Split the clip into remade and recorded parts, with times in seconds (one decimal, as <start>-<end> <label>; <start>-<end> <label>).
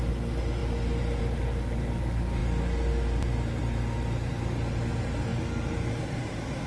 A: 0.0-6.7 recorded